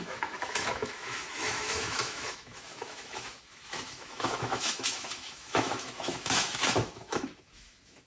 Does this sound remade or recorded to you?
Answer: remade